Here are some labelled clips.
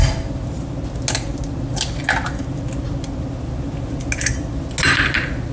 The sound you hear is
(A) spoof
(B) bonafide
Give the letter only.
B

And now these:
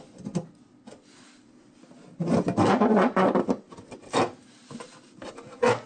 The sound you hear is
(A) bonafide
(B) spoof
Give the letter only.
A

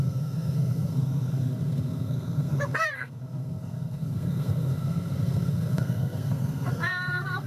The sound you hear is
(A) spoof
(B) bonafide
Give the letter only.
A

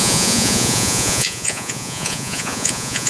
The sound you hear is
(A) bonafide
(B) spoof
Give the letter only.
B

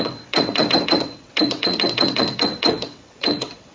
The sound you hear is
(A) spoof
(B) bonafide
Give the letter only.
A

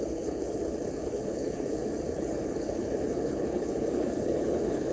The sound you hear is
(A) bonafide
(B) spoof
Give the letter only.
B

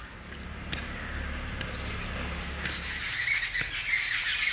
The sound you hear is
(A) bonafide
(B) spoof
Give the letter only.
A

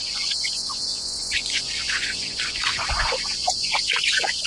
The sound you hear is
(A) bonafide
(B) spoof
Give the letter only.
B